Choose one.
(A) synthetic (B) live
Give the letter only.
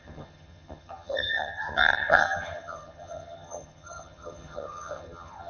A